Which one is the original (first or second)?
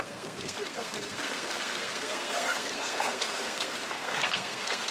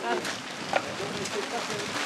second